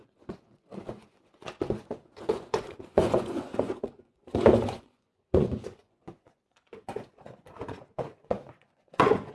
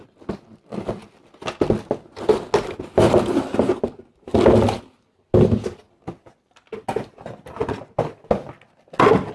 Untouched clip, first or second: second